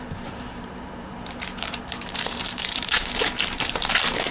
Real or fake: fake